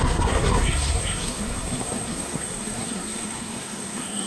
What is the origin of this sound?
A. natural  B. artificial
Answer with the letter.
B